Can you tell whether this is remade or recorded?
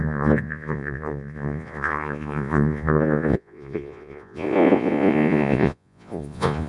remade